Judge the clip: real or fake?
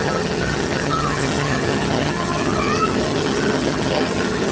fake